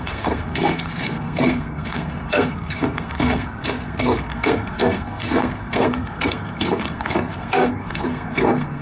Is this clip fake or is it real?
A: fake